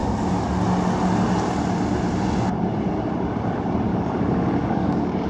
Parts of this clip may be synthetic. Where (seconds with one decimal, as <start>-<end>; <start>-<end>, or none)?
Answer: 3.9-5.3